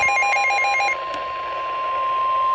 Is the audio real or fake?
real